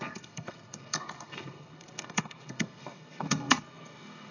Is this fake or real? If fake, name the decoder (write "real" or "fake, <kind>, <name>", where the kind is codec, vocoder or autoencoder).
fake, codec, SNAC